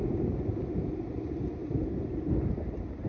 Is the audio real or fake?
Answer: real